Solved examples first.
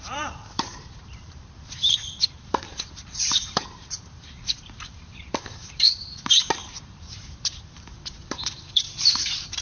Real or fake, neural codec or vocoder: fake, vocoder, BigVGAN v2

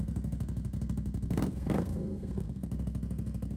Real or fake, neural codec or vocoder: fake, codec, SNAC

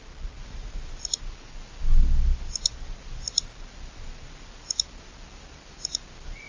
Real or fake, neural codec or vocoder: real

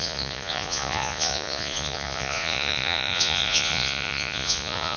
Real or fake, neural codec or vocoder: fake, vocoder, Vocos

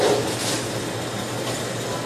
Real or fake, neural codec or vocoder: real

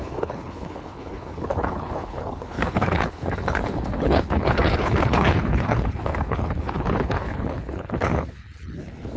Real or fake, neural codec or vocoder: fake, codec, HILCodec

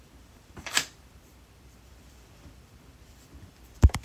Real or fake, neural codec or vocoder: fake, vocoder, BigVGAN v2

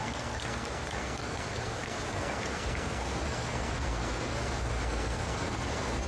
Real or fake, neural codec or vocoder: fake, codec, SNAC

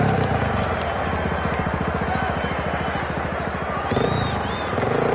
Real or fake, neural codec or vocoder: real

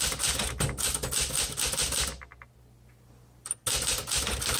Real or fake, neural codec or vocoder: real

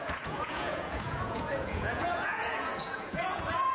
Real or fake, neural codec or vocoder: fake, vocoder, Vocos